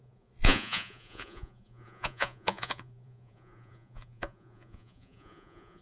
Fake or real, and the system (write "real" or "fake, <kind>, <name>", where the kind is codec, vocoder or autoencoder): fake, vocoder, Vocos